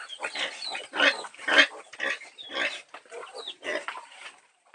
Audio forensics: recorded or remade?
recorded